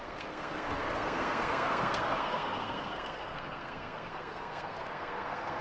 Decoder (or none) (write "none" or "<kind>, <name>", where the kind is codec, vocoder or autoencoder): codec, SNAC